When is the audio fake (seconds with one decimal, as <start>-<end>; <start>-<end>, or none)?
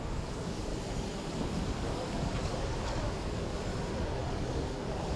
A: 0.0-0.7; 1.3-3.7; 4.3-5.2